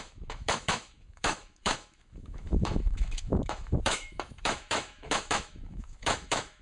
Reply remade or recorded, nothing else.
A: remade